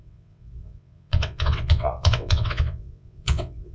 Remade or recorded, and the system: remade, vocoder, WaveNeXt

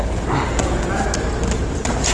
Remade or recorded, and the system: recorded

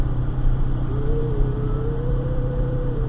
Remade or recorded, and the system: remade, vocoder, BigVGAN v2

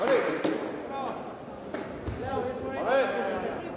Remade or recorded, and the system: recorded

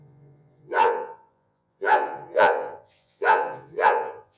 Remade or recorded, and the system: remade, vocoder, Vocos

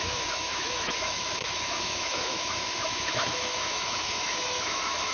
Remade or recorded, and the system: remade, autoencoder, DAC-VAE